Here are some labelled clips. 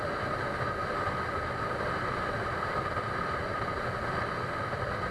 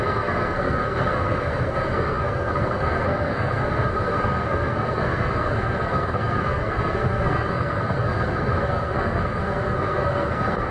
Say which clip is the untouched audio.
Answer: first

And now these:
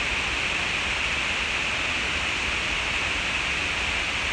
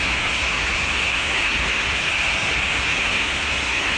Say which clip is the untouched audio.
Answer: first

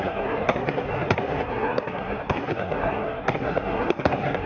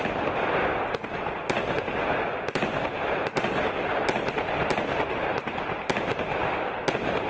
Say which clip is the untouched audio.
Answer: second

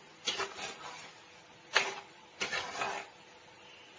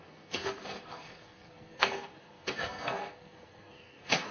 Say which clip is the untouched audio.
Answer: first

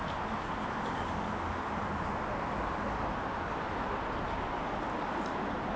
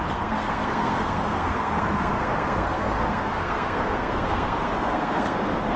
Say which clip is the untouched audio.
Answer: first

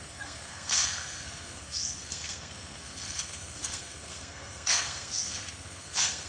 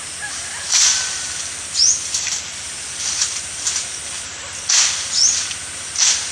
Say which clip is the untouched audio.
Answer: second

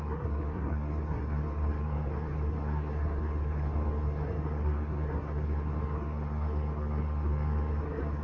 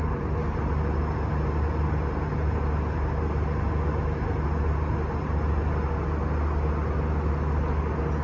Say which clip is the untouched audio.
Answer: second